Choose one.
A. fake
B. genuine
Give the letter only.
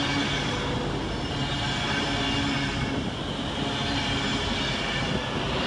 B